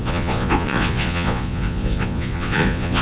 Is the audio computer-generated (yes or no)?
yes